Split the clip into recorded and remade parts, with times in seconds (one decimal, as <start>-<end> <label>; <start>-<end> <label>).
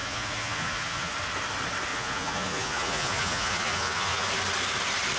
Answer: 0.0-1.1 remade; 1.1-1.9 recorded; 1.9-4.3 remade; 4.3-5.2 recorded